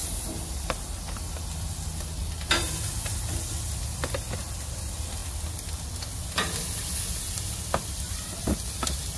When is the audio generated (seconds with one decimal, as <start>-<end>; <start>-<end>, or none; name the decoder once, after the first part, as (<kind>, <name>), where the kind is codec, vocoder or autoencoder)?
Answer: none